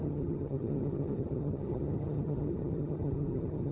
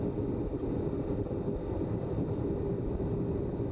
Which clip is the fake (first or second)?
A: first